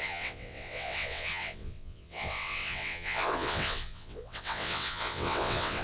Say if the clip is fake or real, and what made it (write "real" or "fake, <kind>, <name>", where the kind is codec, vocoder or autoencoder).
fake, vocoder, WaveNeXt